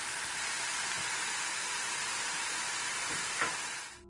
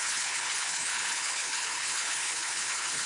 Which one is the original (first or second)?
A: first